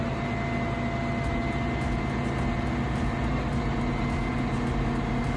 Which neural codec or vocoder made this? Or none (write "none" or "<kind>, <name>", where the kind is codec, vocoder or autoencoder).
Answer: none